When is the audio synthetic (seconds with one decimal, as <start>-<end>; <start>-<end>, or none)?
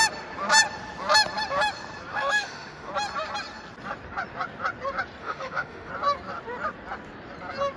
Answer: 2.1-2.9; 5.2-5.9